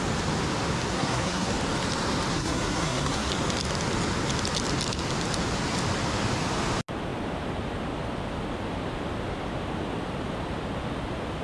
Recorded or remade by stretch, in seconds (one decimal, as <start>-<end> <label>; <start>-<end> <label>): 0.0-0.9 recorded; 0.9-1.5 remade; 1.5-2.3 recorded; 2.3-3.3 remade; 3.3-11.4 recorded